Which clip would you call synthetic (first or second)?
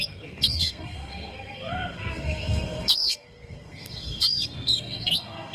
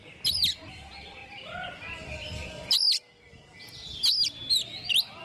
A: first